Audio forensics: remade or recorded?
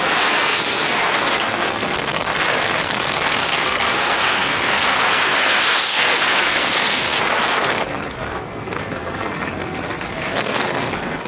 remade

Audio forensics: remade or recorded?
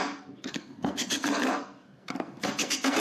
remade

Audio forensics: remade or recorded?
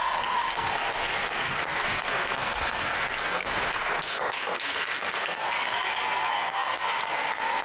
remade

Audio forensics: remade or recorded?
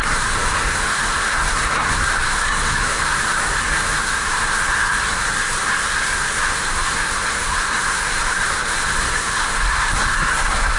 remade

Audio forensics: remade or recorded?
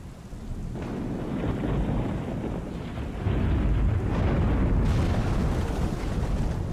recorded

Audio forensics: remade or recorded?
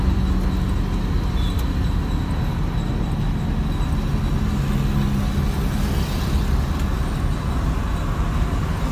recorded